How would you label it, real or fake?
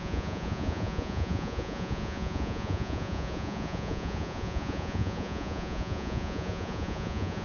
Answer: fake